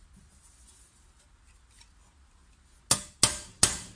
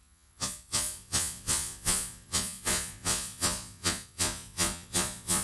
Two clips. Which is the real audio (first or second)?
first